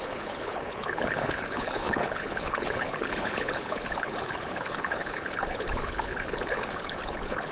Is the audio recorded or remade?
remade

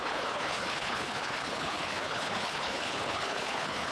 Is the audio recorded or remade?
remade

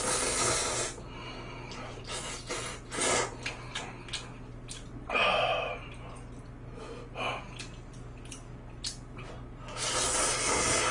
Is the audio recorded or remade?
recorded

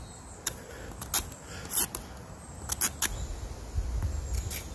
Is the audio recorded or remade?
recorded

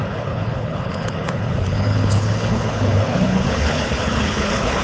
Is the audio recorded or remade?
remade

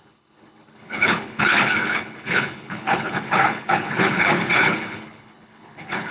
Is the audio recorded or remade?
remade